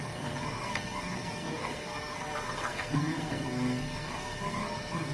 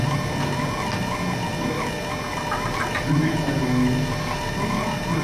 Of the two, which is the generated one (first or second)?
first